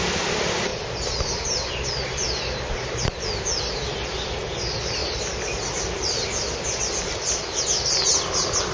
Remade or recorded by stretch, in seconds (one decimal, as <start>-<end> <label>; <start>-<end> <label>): 0.0-8.7 recorded